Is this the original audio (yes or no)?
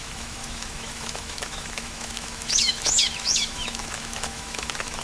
no